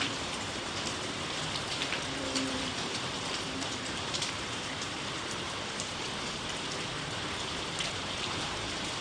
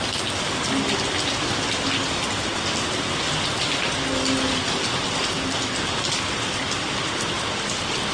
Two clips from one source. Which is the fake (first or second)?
first